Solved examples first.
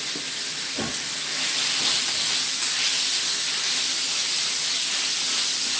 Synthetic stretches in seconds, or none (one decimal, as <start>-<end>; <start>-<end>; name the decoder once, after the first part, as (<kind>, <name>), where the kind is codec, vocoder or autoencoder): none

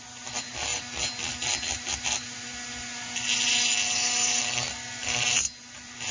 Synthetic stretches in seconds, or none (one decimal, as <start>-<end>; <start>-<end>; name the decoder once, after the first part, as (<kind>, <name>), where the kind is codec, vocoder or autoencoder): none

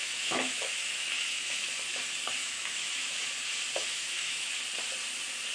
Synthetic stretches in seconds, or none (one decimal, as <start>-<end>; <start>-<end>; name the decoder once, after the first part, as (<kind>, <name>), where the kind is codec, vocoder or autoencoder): 0.0-1.7 (autoencoder, DAC-VAE); 2.4-3.3; 3.9-4.6